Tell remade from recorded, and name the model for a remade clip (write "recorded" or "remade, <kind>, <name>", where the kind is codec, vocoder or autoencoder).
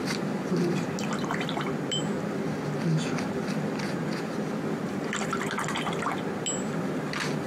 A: recorded